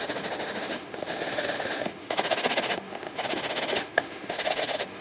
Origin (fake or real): fake